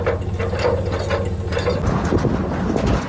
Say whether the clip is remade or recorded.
recorded